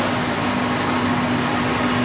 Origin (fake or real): real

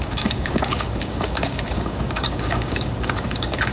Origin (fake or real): fake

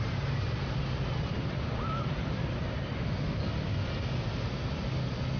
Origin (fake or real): real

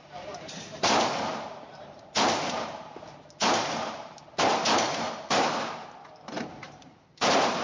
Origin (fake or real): fake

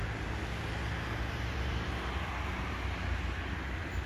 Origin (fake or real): real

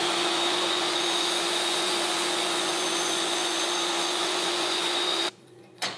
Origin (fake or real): fake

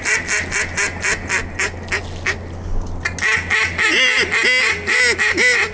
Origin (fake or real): real